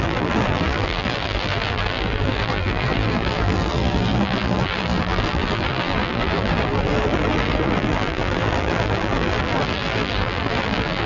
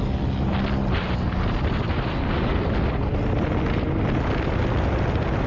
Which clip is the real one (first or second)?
second